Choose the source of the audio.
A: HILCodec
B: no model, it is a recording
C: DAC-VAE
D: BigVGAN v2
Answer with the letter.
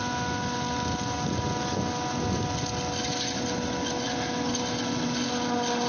B